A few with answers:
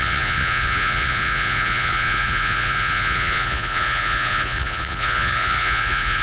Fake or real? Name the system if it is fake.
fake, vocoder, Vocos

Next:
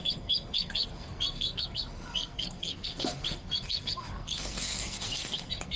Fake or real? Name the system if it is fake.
fake, codec, SNAC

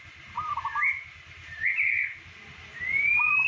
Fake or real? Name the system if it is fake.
real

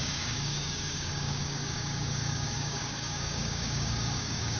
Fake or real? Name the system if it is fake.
fake, codec, DAC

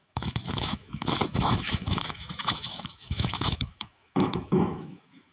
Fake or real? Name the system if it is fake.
fake, autoencoder, DAC-VAE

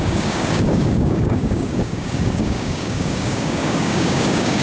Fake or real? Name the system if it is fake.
fake, codec, DAC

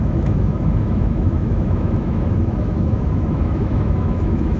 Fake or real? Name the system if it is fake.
fake, autoencoder, DAC-VAE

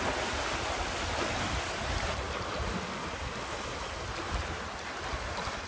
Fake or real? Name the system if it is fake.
real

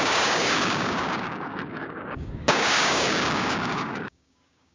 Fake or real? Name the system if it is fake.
fake, codec, DAC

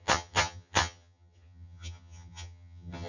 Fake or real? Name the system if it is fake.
fake, vocoder, HiFi-GAN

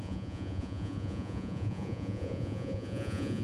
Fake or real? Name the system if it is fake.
fake, vocoder, Vocos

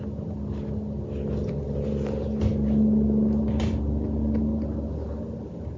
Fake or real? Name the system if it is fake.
real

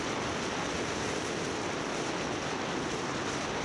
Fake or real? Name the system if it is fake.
real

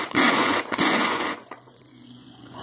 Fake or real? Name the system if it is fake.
fake, vocoder, Vocos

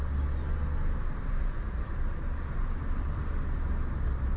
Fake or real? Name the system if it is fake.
real